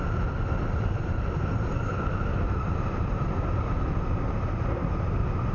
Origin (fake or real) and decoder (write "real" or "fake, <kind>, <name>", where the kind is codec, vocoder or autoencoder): fake, vocoder, BigVGAN v2